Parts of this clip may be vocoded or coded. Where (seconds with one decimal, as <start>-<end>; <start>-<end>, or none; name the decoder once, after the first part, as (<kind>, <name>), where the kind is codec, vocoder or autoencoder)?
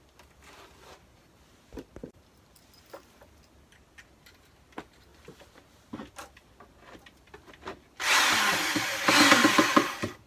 none